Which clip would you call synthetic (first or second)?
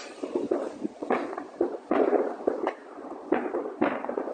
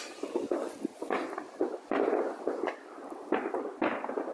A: first